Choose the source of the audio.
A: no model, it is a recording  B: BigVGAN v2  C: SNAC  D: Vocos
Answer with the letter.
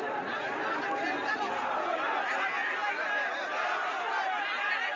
A